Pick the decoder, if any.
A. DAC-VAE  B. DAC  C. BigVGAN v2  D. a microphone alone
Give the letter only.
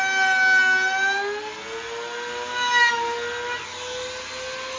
D